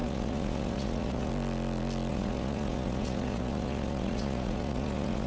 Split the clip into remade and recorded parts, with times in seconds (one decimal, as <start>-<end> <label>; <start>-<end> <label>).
0.0-1.3 remade; 1.3-2.1 recorded; 2.1-5.3 remade